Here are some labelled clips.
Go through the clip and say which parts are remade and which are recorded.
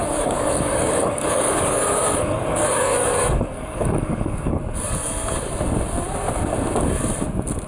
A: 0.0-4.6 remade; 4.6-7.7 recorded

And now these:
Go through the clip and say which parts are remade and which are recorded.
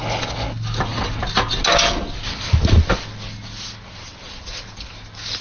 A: 0.0-5.4 recorded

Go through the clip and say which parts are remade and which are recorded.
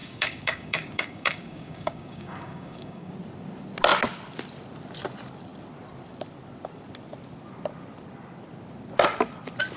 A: 0.0-3.1 remade; 3.1-9.8 recorded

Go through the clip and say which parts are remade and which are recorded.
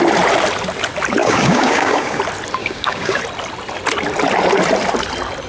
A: 0.0-1.2 recorded; 1.2-2.2 remade; 2.2-2.6 recorded; 2.6-3.2 remade; 3.2-5.5 recorded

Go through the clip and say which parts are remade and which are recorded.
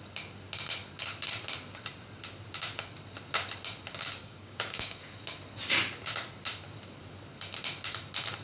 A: 0.0-4.2 recorded; 4.2-5.1 remade; 5.1-8.4 recorded